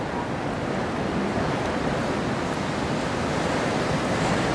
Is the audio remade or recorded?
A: recorded